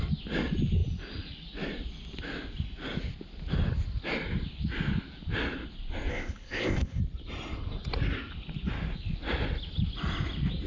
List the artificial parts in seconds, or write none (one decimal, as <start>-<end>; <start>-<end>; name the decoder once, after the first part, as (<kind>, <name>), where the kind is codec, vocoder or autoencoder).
6.1-7.0 (codec, ZipCodec)